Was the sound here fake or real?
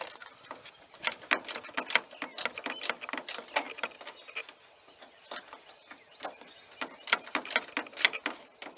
real